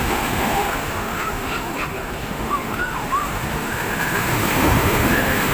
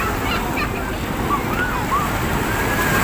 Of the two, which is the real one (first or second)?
second